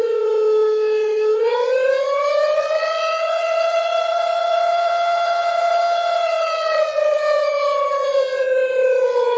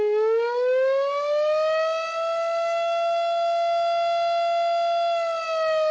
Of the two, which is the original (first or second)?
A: second